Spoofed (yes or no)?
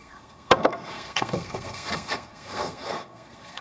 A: yes